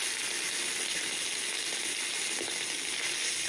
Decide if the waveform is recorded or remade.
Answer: recorded